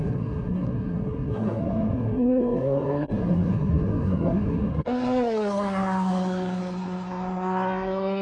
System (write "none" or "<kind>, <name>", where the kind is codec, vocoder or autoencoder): codec, SNAC